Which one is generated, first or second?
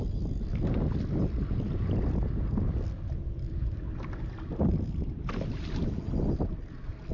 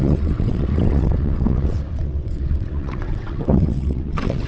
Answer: second